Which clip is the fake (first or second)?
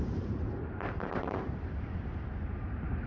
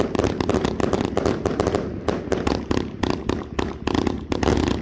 first